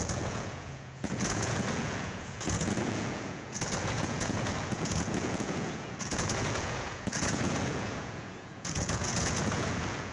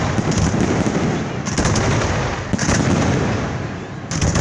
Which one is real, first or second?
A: second